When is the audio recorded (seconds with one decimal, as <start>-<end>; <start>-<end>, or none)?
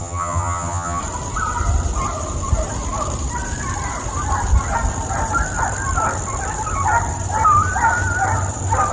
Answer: 1.0-8.9